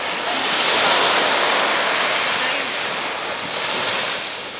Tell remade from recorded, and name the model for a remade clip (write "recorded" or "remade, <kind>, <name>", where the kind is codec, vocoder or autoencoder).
recorded